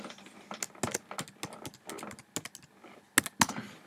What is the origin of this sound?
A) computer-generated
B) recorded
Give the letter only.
B